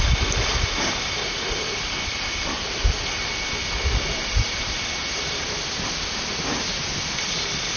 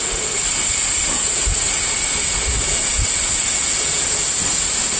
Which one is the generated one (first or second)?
second